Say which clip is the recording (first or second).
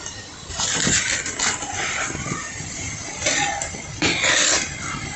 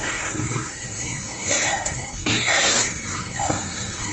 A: first